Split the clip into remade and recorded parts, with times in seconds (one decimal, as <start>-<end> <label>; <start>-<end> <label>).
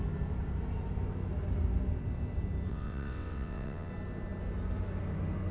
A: 0.0-2.7 recorded; 2.7-3.9 remade; 3.9-5.5 recorded